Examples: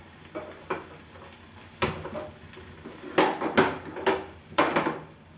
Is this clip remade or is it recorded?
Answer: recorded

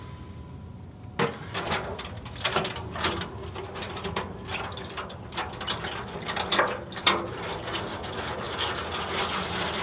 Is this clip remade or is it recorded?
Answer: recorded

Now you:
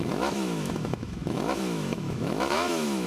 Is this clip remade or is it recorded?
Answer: remade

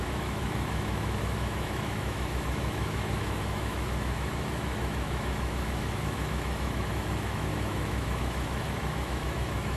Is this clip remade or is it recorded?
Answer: remade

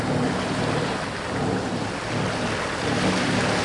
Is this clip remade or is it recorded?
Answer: recorded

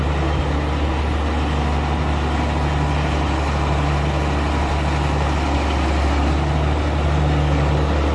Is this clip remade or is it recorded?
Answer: recorded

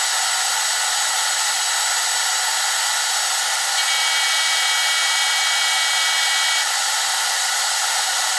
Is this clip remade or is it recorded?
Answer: recorded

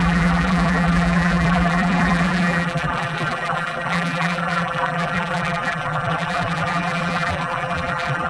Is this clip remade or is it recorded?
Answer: remade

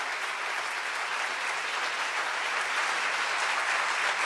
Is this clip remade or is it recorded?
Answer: recorded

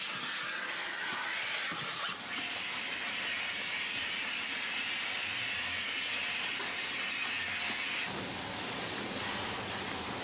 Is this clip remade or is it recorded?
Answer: recorded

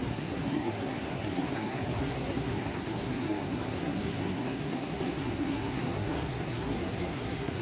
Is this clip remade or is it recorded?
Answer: remade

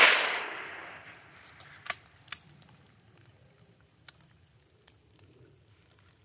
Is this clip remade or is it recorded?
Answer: recorded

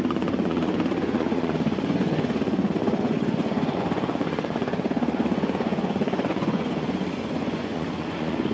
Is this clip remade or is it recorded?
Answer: remade